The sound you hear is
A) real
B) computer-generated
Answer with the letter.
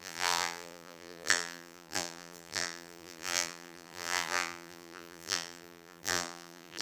B